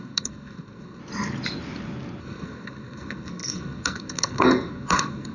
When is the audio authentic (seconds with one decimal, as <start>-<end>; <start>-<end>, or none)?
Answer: 1.0-2.2